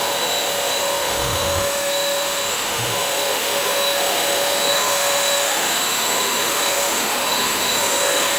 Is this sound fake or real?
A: fake